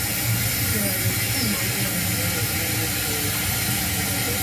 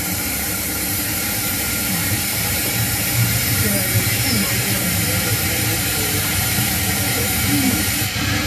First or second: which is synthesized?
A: second